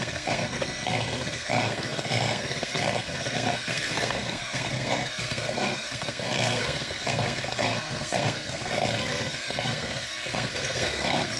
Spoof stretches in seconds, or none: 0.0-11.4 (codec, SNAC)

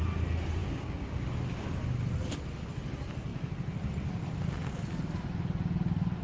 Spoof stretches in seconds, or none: 0.6-1.1 (codec, DAC)

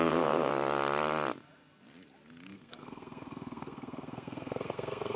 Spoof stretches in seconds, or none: 0.0-0.5 (codec, SNAC); 2.5-5.2

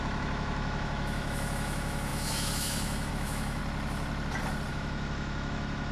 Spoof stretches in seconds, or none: 0.0-3.6 (autoencoder, DAC-VAE); 4.7-5.9

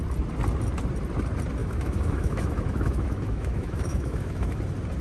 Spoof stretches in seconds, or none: 1.6-4.6 (autoencoder, DAC-VAE)

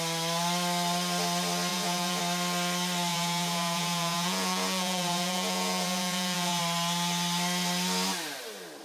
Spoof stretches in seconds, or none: 1.7-2.2 (vocoder, Vocos); 3.1-6.6

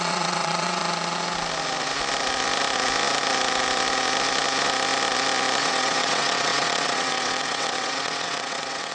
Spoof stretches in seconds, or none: 0.0-0.8 (vocoder, WaveNeXt); 5.6-8.9